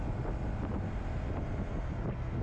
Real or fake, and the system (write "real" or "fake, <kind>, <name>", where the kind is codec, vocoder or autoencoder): real